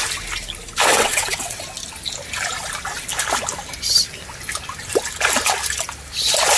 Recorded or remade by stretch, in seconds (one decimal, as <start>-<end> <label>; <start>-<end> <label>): 0.0-0.9 recorded; 0.9-1.6 remade; 1.6-6.6 recorded